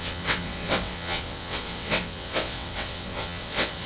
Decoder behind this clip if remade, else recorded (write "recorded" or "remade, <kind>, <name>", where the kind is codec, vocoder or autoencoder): remade, vocoder, WaveNeXt